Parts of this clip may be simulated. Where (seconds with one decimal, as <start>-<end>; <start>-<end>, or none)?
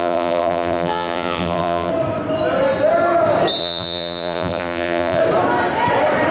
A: 0.0-1.9; 3.6-5.2